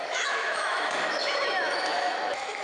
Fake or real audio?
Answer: fake